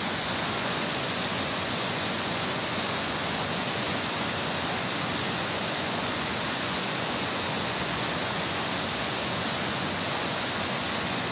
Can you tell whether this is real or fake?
fake